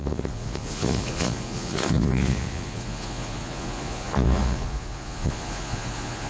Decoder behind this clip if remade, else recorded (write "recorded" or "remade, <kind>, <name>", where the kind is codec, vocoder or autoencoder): remade, vocoder, Vocos